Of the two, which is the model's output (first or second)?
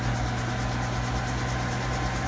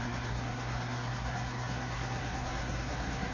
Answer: second